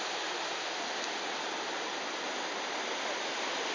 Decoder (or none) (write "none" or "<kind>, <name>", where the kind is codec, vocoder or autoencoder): none